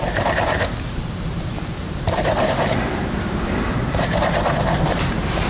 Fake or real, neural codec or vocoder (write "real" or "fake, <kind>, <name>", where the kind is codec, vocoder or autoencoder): fake, vocoder, BigVGAN v2